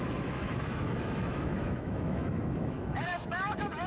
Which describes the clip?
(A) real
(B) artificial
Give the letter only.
B